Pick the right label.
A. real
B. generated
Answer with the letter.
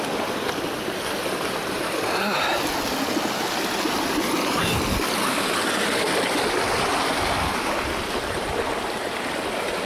A